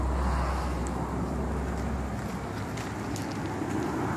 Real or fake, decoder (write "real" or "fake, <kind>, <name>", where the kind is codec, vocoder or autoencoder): real